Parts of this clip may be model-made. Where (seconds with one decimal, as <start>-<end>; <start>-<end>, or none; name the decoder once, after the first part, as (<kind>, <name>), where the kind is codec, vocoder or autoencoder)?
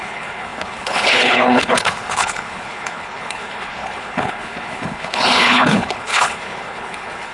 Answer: 0.0-7.3 (codec, HILCodec)